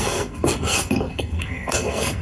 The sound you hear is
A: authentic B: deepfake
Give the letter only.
B